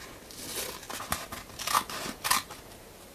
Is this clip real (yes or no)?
yes